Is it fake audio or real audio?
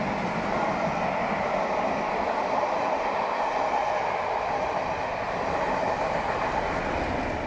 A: real